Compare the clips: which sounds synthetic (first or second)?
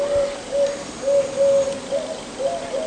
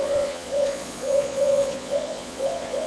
second